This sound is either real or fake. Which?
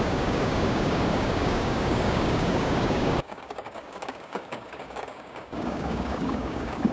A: fake